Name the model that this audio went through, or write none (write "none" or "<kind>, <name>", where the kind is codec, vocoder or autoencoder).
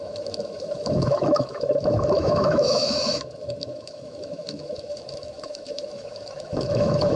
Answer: autoencoder, DAC-VAE